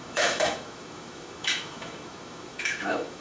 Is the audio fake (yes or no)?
yes